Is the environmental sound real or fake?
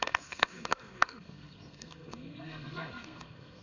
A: fake